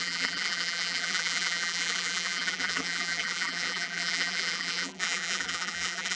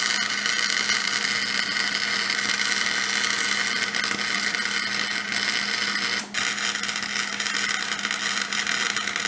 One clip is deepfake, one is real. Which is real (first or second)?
second